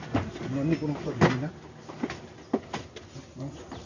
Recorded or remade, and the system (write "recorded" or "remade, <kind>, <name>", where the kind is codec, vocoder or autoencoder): recorded